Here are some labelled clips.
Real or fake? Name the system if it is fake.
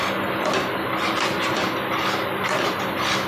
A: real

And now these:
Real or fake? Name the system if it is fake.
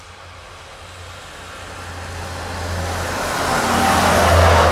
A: real